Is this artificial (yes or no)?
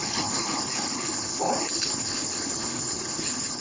yes